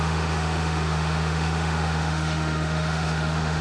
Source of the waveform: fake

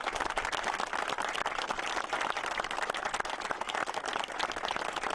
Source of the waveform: real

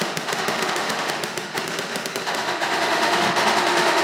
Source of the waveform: fake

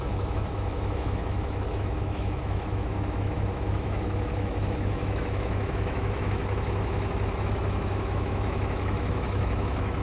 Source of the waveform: fake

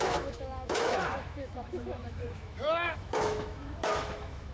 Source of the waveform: fake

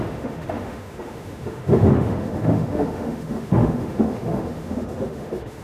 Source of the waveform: fake